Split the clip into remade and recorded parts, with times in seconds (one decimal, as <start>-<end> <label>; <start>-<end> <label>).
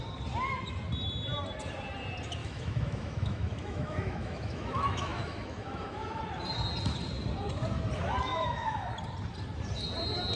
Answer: 0.0-2.4 recorded; 2.4-6.2 remade; 6.2-8.3 recorded; 8.3-8.9 remade; 8.9-10.4 recorded